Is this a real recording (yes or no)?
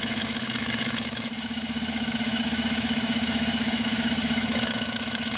no